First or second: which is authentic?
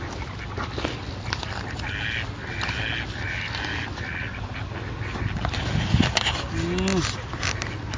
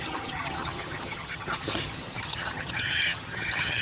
first